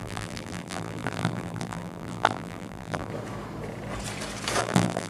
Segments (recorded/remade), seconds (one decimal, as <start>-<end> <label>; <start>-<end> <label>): 0.0-3.1 remade; 3.1-4.6 recorded; 4.6-5.1 remade